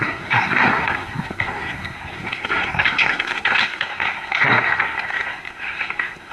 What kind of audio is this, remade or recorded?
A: remade